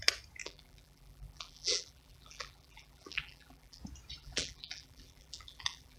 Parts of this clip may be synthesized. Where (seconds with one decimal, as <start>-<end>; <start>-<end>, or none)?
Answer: 0.4-3.8; 4.2-6.0